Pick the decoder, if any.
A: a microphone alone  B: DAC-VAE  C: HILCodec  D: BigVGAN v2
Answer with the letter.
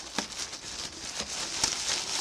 A